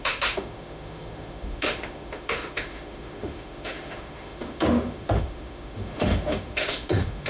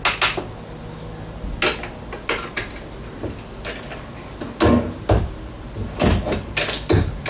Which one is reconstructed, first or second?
first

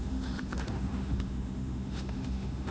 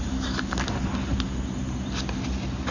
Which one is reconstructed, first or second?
first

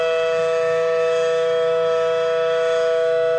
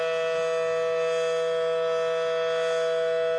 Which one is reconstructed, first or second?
first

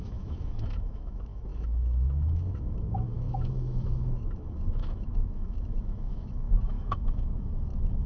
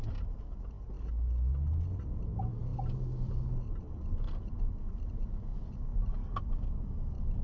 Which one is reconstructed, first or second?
first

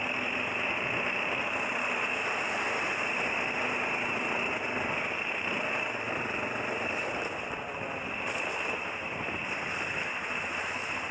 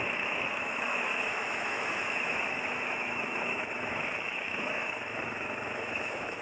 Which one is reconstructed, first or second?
second